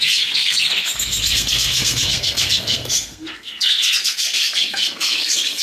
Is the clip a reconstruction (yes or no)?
yes